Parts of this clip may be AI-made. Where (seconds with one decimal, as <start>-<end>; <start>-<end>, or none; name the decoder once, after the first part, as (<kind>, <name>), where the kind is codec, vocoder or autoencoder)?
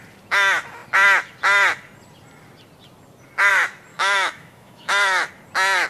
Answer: 3.9-5.3 (autoencoder, DAC-VAE)